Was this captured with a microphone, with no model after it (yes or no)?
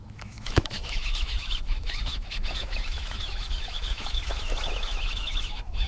no